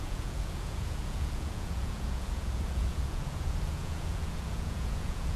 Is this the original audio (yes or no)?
no